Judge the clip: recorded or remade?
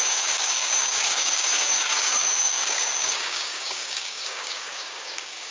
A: remade